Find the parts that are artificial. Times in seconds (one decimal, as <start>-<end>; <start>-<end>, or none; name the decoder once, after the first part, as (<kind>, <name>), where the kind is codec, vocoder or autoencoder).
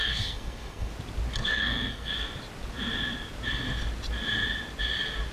0.0-0.9 (codec, SNAC); 1.4-2.1